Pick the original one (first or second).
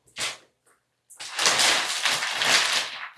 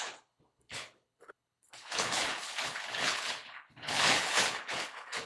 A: first